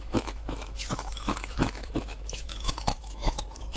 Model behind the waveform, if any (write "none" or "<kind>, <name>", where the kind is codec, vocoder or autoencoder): autoencoder, DAC-VAE